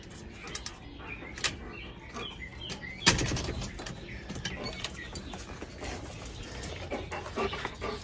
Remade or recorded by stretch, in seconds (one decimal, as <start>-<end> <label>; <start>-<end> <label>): 0.0-8.0 recorded